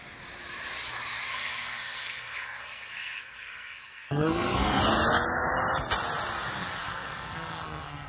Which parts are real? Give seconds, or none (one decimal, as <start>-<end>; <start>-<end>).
0.0-1.3; 4.8-6.8